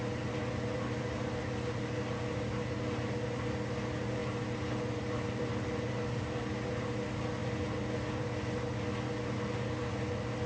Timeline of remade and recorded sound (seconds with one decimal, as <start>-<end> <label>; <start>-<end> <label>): 0.0-10.5 recorded